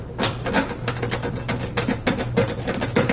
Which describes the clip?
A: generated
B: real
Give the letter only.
B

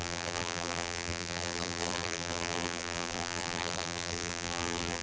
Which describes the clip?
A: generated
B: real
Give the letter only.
A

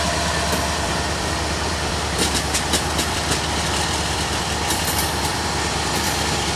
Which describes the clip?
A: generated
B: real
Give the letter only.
A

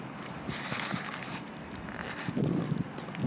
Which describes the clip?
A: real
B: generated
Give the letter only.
A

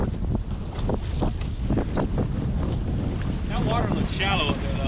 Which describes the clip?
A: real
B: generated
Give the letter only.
A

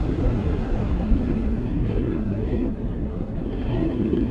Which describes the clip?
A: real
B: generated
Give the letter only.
B